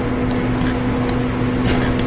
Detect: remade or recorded recorded